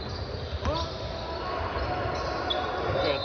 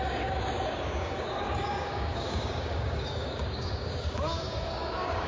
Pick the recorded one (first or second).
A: first